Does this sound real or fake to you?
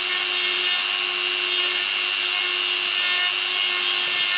real